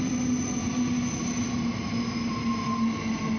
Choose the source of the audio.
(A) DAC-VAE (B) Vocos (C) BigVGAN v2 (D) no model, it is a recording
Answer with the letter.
D